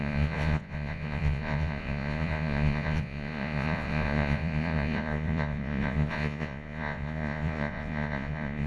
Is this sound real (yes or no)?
no